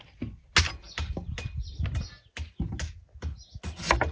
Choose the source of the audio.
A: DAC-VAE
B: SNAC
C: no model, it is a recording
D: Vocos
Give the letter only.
C